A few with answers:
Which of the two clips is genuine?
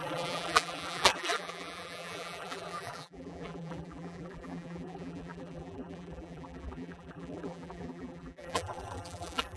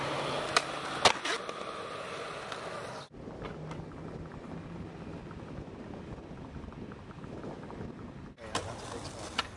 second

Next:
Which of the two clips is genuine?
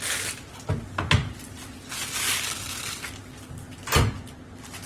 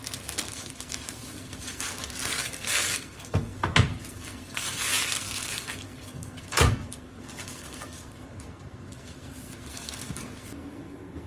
first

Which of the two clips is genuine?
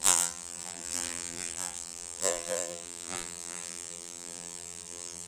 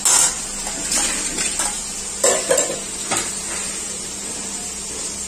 second